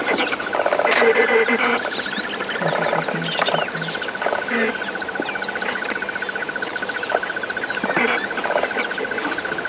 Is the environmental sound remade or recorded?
recorded